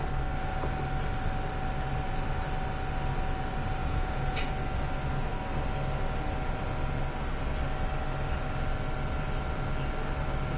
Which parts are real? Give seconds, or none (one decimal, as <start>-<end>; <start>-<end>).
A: 0.0-3.8; 4.5-10.6